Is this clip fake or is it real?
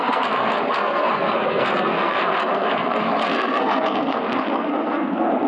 fake